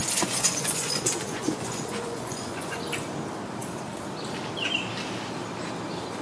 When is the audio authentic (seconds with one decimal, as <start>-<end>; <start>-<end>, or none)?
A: 2.8-6.2